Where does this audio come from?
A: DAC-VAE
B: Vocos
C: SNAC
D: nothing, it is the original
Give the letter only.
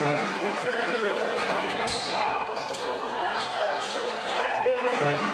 C